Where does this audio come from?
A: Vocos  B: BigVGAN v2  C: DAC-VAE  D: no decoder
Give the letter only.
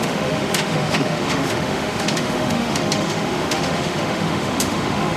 C